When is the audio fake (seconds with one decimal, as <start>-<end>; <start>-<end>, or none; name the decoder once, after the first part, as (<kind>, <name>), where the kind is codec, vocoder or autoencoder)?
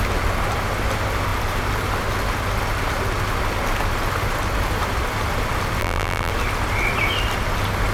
5.8-6.3 (vocoder, BigVGAN v2)